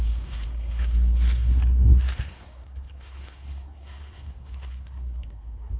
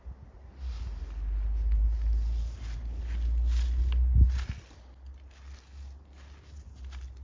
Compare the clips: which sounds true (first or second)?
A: second